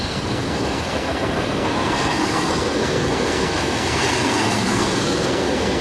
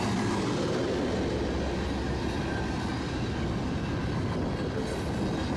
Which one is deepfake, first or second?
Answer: first